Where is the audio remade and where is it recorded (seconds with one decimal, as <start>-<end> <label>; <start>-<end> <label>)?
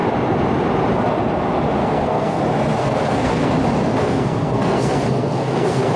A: 0.0-1.8 recorded; 1.8-2.4 remade; 2.4-2.8 recorded; 2.8-3.5 remade; 3.5-4.0 recorded; 4.0-6.0 remade